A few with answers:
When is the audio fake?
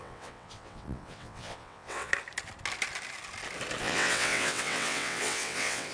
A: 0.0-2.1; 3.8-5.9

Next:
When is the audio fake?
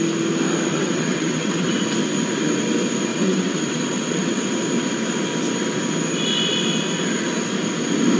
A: 0.7-1.8; 3.1-4.5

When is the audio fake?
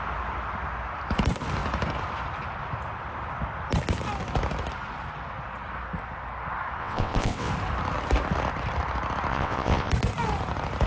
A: 6.8-7.5; 9.3-9.9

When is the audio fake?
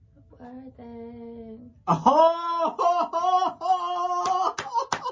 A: none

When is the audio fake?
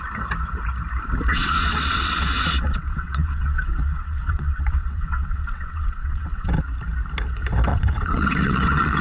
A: 1.3-6.5; 7.7-9.0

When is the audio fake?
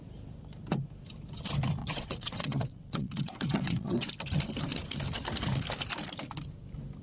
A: 1.8-4.1